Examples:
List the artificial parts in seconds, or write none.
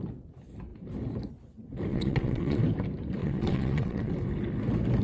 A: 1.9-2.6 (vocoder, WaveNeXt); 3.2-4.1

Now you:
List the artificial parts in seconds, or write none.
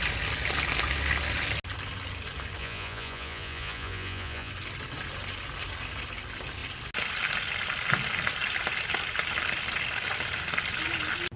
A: 2.6-4.5 (vocoder, Vocos)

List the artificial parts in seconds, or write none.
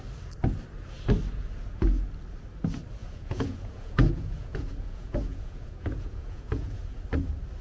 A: 3.0-7.0 (vocoder, Vocos)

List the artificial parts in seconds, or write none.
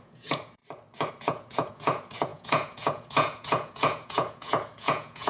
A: 0.0-0.6 (vocoder, Vocos); 1.1-5.3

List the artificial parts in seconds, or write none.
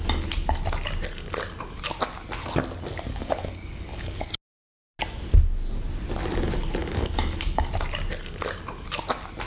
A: 3.1-4.3 (codec, DAC); 6.8-7.7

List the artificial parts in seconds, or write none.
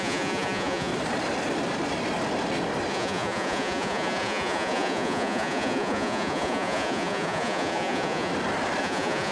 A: 0.0-0.9 (vocoder, Vocos); 2.9-8.3; 8.8-9.3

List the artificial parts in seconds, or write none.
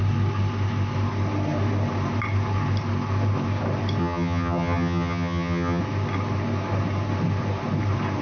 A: 4.0-5.8 (vocoder, HiFi-GAN)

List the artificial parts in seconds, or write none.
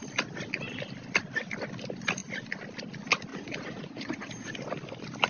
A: 3.3-4.5 (vocoder, Vocos)